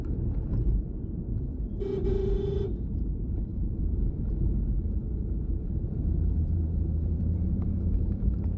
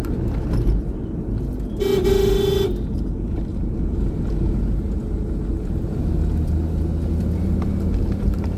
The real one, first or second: second